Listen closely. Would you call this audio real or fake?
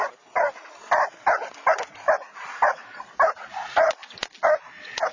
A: real